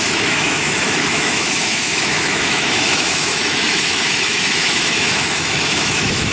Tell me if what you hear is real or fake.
fake